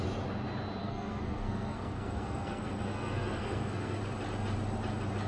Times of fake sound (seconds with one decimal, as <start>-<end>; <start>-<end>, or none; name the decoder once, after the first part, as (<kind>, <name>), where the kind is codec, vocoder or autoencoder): 0.8-4.0 (codec, SNAC)

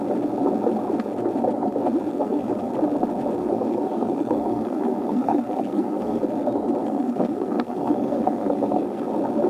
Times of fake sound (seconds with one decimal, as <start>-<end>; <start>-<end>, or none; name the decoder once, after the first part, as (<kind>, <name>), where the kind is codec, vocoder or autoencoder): 2.1-2.7 (codec, SNAC); 3.4-6.2; 6.8-9.1

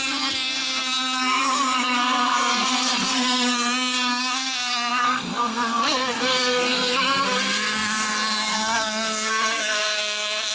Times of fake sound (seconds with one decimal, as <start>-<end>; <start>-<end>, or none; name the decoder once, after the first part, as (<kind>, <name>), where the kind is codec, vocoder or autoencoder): 0.0-10.5 (codec, SNAC)